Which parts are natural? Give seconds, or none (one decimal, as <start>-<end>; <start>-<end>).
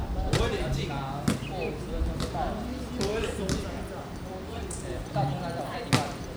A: 0.0-3.1; 5.8-6.4